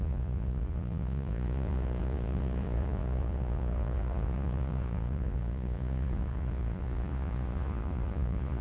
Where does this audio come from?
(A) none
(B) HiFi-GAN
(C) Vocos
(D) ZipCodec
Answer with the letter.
C